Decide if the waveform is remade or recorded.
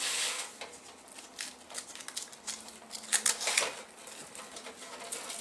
recorded